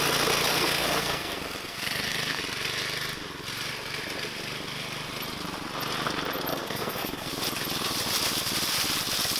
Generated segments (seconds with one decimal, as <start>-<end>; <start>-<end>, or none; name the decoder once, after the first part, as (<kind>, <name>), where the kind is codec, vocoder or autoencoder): 0.5-2.4 (codec, SNAC); 6.5-7.3

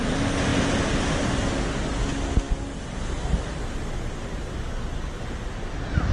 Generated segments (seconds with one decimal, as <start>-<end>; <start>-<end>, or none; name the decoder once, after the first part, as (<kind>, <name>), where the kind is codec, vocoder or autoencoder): none

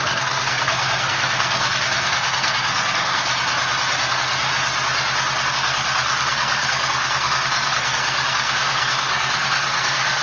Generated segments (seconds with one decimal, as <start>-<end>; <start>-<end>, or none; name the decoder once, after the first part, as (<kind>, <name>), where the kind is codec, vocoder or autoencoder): 0.0-3.3 (codec, SNAC); 4.1-4.5; 5.5-10.2

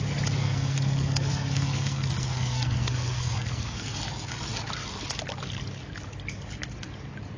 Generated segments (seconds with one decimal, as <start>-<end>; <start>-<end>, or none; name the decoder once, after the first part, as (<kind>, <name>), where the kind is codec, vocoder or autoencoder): 0.4-4.0 (codec, SNAC)

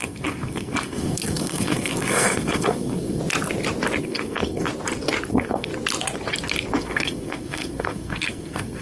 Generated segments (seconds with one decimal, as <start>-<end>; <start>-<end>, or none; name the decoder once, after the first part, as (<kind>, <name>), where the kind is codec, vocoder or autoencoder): 0.0-3.2 (codec, SNAC); 4.0-4.7; 5.3-5.7; 6.7-8.8

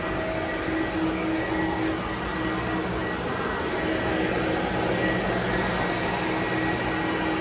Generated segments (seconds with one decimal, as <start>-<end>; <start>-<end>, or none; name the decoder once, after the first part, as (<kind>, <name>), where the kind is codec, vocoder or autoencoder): none

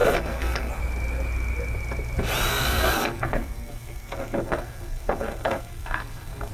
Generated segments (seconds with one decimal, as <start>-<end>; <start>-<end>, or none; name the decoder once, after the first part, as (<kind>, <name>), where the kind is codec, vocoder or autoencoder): 0.0-0.8 (codec, SNAC); 2.5-6.5

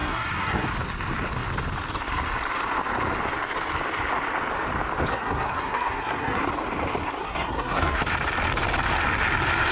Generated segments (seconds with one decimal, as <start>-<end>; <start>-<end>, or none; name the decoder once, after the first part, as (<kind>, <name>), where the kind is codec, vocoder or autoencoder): 0.0-0.7 (codec, SNAC); 5.1-6.4; 7.2-8.0